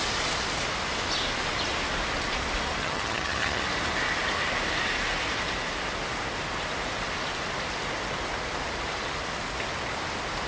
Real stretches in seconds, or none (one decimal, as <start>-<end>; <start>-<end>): 0.0-2.8; 3.6-10.5